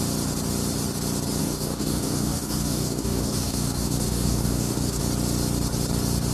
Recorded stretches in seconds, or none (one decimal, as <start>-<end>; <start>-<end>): 0.0-1.4; 5.0-6.3